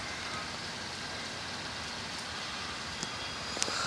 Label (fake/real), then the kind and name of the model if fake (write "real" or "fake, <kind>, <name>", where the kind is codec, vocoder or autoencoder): fake, vocoder, BigVGAN v2